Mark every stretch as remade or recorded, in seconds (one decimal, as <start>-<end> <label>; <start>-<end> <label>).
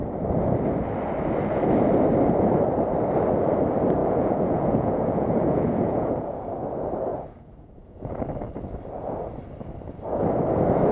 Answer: 0.0-4.0 recorded; 4.0-6.5 remade; 6.5-7.1 recorded; 7.1-8.2 remade; 8.2-10.9 recorded